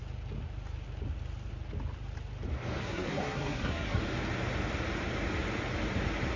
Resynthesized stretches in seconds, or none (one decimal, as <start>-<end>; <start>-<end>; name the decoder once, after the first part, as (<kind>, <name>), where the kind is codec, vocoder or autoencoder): 2.8-4.0 (codec, SNAC)